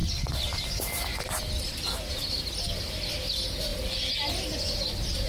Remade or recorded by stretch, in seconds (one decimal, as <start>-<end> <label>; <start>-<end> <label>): 0.0-5.3 recorded

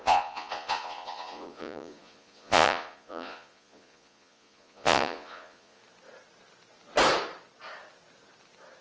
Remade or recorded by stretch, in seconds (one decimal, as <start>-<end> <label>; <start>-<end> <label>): 0.0-5.8 remade; 5.8-8.8 recorded

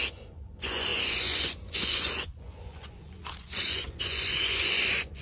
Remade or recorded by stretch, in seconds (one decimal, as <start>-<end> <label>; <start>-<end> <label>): 0.0-5.2 remade

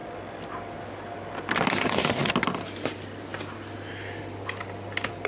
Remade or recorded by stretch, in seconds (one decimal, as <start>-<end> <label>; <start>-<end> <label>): 0.0-5.3 recorded

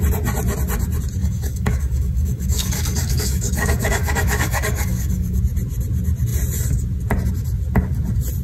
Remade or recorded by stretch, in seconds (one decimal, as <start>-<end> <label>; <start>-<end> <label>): 0.0-1.2 recorded; 1.2-5.4 remade; 5.4-8.4 recorded

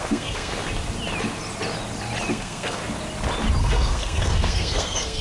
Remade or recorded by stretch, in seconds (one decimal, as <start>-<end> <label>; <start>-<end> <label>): 0.0-0.5 remade; 0.5-2.3 recorded; 2.3-2.8 remade; 2.8-3.6 recorded; 3.6-5.2 remade